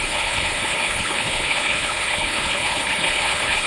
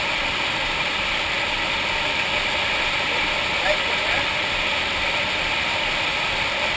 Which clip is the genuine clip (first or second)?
second